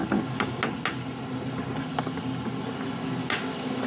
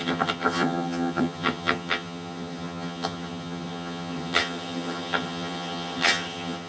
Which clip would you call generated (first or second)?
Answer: second